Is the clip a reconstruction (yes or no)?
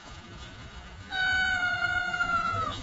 yes